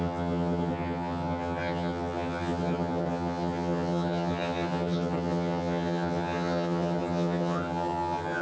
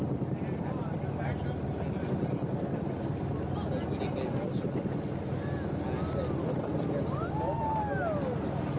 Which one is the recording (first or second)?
second